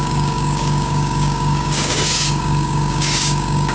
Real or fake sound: fake